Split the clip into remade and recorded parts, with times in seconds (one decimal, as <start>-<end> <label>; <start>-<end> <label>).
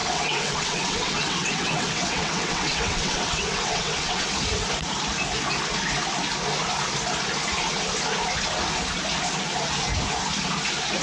0.0-4.3 remade; 4.3-11.0 recorded